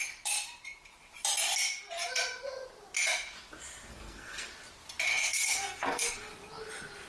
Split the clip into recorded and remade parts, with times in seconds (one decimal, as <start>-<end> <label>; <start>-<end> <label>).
0.0-3.9 recorded; 3.9-4.5 remade; 4.5-5.1 recorded; 5.1-6.3 remade; 6.3-7.1 recorded